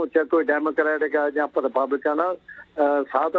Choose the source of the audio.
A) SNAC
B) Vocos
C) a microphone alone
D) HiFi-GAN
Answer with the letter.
C